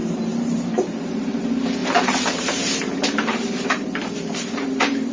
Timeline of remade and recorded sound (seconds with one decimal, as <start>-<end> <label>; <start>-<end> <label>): 0.0-1.4 remade; 1.4-1.8 recorded; 1.8-5.1 remade